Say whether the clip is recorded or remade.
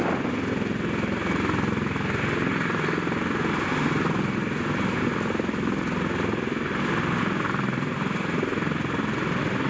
recorded